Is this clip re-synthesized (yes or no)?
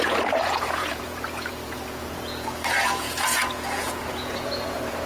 yes